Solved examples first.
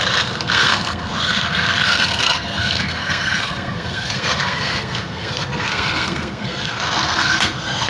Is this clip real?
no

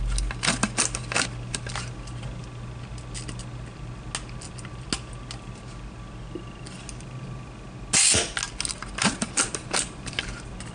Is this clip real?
yes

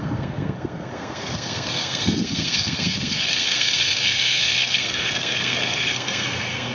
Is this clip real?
no